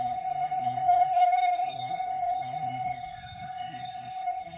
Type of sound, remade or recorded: remade